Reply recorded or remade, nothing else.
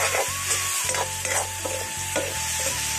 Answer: recorded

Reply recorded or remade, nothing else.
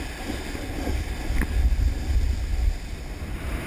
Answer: recorded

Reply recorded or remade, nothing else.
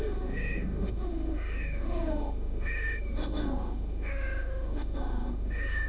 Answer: remade